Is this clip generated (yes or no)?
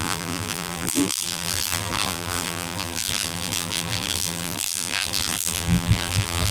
yes